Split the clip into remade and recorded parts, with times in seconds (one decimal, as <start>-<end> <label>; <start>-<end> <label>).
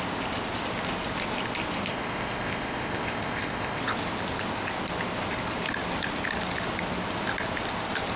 0.0-1.9 recorded; 1.9-3.8 remade; 3.8-8.2 recorded